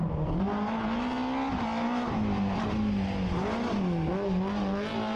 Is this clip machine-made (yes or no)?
no